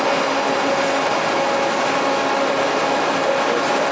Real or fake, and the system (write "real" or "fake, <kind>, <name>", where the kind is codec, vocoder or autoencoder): real